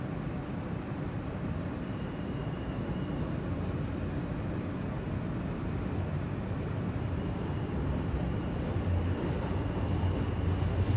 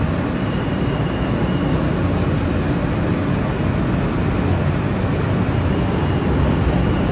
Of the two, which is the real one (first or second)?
second